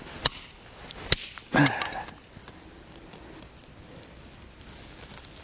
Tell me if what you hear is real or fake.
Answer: real